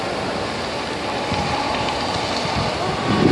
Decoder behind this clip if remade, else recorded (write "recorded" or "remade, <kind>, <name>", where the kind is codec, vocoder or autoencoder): recorded